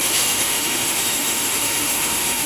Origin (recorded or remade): remade